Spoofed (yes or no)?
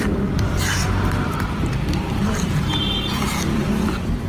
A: yes